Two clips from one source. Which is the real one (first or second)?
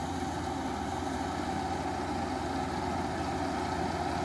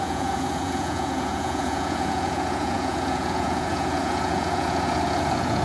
first